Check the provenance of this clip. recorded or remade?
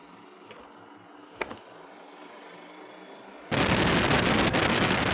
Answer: recorded